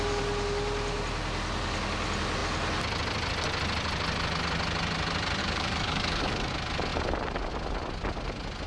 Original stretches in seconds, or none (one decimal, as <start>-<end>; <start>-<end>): 0.0-5.4; 6.5-8.7